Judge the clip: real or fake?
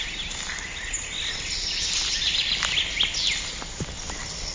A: real